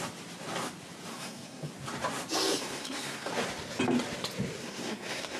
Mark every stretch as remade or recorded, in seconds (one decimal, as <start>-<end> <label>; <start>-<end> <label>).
0.0-1.1 recorded; 1.1-1.7 remade; 1.7-2.6 recorded; 2.6-3.3 remade; 3.3-4.6 recorded; 4.6-5.4 remade